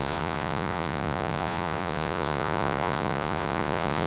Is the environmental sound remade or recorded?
remade